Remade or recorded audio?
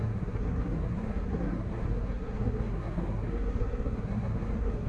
remade